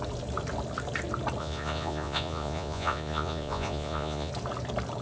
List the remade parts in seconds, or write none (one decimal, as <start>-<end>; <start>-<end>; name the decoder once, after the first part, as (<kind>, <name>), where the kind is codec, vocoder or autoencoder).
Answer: 1.4-4.3 (vocoder, Vocos)